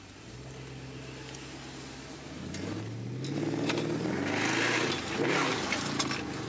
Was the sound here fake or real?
real